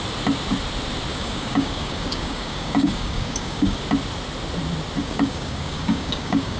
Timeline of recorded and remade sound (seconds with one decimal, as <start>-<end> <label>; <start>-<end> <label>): 0.0-1.1 recorded; 1.1-3.8 remade; 3.8-5.0 recorded; 5.0-6.6 remade